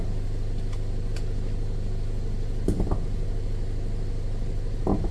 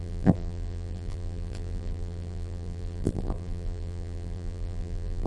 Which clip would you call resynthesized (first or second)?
second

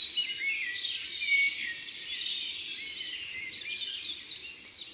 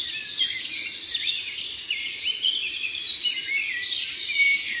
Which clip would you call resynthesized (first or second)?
second